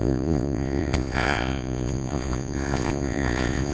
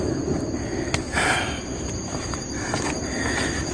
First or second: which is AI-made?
first